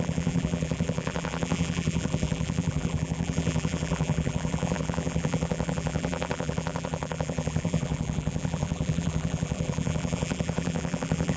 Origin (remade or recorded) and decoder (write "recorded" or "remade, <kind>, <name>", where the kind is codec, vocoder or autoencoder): remade, vocoder, BigVGAN v2